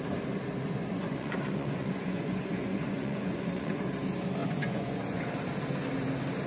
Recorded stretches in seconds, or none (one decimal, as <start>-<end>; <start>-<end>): 0.0-0.9; 3.8-4.4; 5.2-6.5